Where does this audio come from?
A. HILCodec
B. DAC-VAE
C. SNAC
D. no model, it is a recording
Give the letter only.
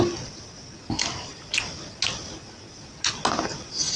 D